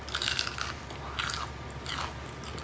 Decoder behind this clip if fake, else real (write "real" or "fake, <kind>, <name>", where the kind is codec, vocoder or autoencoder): real